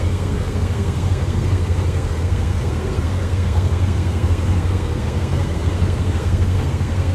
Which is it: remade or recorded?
remade